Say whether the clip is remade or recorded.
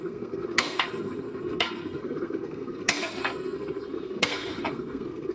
remade